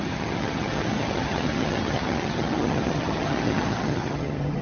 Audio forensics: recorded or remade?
remade